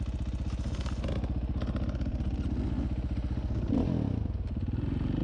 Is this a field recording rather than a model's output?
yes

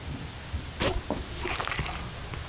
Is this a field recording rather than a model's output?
yes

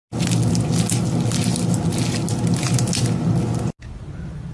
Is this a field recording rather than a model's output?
yes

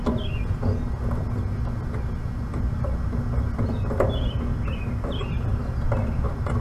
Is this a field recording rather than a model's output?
yes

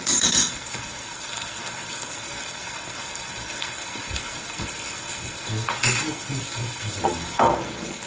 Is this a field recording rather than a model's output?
no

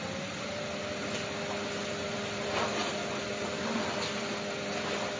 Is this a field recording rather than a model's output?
yes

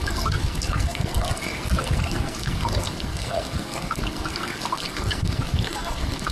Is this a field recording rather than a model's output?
no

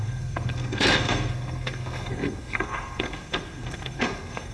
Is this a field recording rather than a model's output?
no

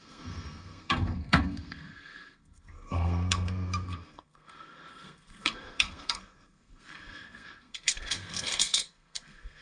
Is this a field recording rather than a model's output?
no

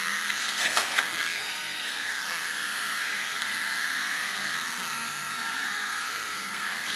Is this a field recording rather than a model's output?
no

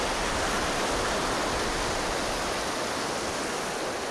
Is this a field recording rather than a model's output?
yes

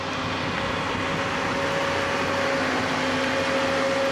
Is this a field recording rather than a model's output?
yes